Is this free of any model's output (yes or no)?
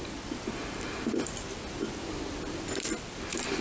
yes